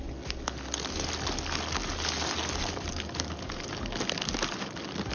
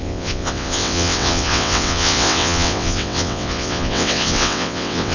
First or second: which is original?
first